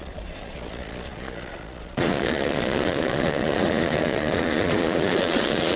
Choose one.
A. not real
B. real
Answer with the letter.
A